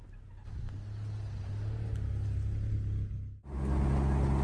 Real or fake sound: real